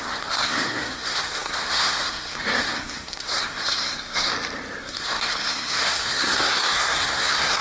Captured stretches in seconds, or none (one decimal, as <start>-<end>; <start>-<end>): 4.3-4.8